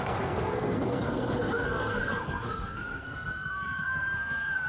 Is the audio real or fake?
fake